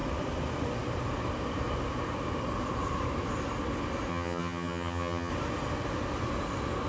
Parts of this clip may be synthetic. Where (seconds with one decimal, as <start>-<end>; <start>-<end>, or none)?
4.1-5.3